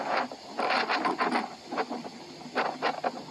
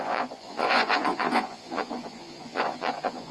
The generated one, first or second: second